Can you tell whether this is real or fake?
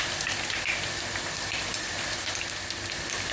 fake